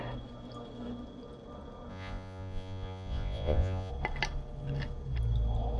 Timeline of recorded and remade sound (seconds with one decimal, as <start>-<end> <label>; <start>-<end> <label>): 0.0-1.9 recorded; 1.9-3.9 remade; 3.9-5.8 recorded